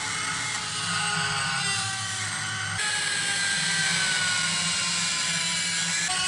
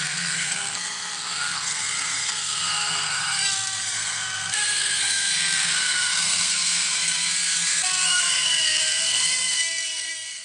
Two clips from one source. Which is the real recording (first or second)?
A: first